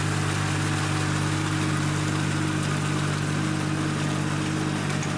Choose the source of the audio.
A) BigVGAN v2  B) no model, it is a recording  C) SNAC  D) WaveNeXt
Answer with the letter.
B